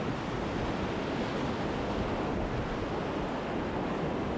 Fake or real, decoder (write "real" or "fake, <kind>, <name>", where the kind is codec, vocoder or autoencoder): real